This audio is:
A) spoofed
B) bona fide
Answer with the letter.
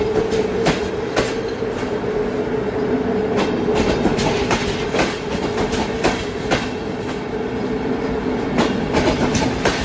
B